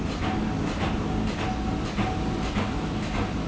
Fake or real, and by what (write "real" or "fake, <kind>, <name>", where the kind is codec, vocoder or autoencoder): real